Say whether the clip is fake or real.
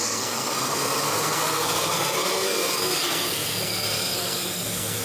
fake